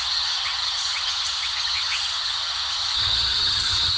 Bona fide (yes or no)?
no